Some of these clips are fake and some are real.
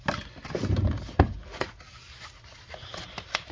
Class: real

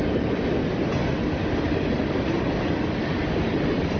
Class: real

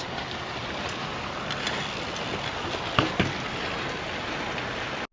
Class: real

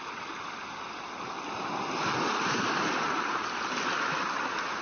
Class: real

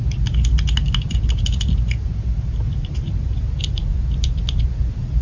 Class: real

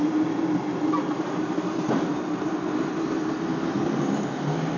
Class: real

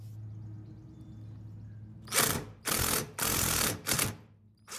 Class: real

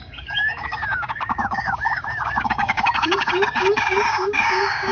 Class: fake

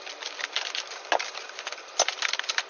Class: real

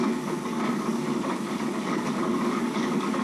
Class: fake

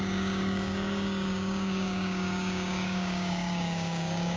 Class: fake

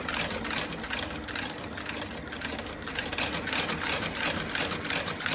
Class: real